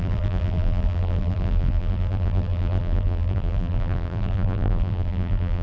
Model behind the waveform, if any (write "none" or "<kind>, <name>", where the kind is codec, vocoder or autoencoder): vocoder, BigVGAN v2